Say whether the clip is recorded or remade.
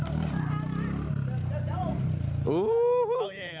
recorded